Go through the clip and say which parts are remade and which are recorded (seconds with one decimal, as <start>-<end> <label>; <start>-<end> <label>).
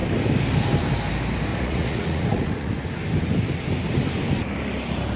0.0-1.5 recorded; 1.5-2.7 remade; 2.7-5.2 recorded